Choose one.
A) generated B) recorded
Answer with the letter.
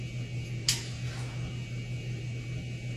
B